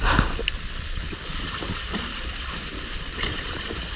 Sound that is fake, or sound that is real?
fake